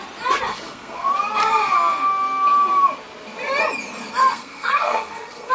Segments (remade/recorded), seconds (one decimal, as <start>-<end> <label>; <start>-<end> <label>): 0.0-0.5 recorded; 0.5-1.1 remade; 1.1-4.2 recorded; 4.2-5.5 remade